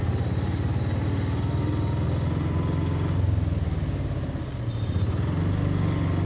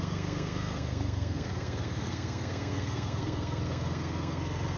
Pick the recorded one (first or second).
first